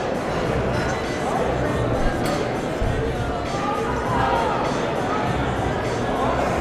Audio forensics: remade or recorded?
recorded